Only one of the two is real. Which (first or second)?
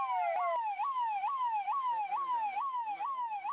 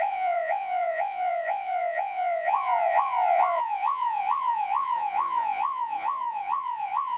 first